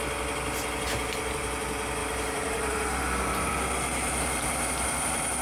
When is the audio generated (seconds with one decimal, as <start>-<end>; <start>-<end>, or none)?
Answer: 2.0-3.5; 3.9-5.4